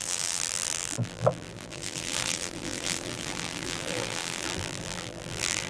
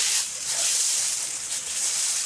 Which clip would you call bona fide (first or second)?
second